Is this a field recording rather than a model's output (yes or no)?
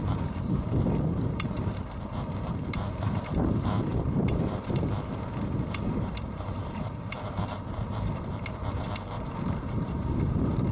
no